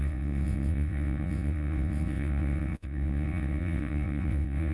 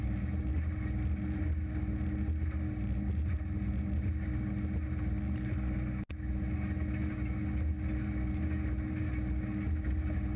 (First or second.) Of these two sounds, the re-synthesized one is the first